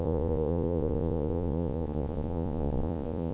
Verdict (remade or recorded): remade